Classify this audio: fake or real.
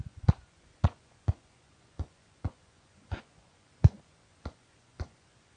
fake